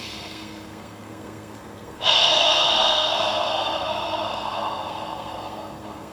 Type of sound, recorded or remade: remade